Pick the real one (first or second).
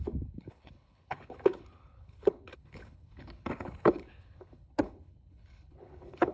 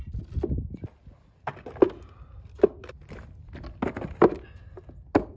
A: second